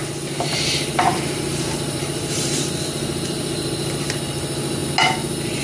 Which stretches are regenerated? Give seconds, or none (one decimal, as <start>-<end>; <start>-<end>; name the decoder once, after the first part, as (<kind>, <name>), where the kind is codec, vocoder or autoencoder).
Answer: 0.5-3.9 (vocoder, BigVGAN v2)